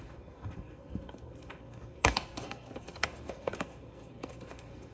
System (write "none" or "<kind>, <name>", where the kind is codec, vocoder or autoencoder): codec, SNAC